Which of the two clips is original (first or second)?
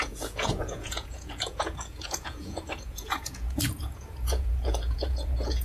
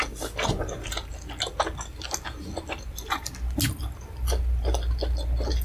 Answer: second